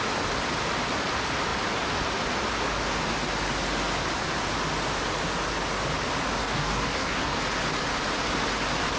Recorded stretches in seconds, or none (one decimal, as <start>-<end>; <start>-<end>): 0.0-6.4; 7.4-9.0